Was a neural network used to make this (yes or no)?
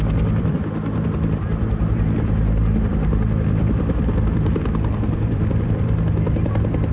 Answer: yes